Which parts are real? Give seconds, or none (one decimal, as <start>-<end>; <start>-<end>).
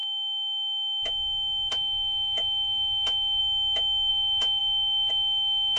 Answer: 0.0-1.7; 3.4-4.1